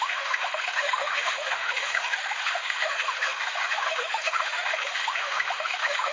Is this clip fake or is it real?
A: fake